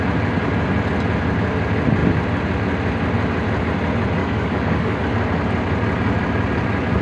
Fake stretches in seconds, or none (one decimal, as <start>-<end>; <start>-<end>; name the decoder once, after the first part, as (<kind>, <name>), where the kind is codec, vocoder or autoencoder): 4.2-5.0 (codec, DAC)